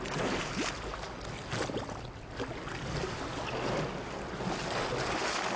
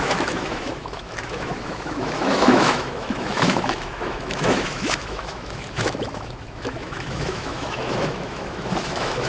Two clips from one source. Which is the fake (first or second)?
second